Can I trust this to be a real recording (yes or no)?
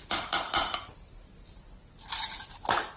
yes